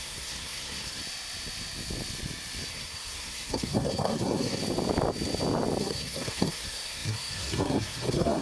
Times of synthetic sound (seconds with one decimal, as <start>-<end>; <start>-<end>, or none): 0.0-1.0; 2.7-4.6; 5.8-8.4